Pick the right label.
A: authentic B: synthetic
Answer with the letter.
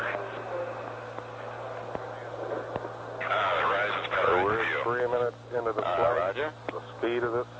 A